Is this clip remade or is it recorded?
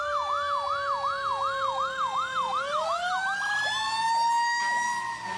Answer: recorded